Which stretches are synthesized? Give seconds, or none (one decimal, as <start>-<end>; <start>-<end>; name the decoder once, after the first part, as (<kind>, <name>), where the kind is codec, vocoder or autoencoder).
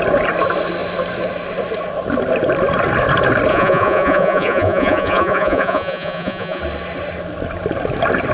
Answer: 3.5-6.6 (vocoder, Vocos)